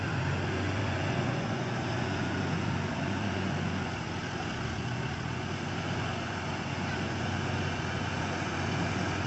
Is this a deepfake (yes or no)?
yes